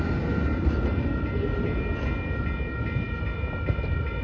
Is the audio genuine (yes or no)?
yes